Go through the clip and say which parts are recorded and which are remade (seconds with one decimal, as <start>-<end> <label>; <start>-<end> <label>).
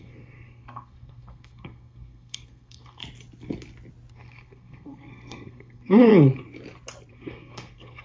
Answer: 0.0-3.0 remade; 3.0-4.1 recorded; 4.1-6.1 remade; 6.1-7.1 recorded; 7.1-8.0 remade